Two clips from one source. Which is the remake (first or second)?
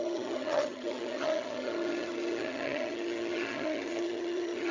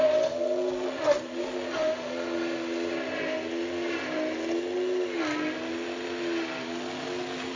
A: first